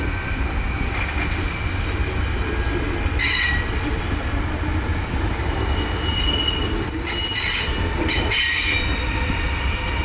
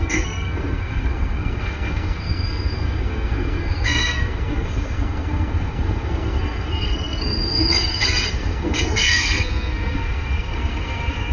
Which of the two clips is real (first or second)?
first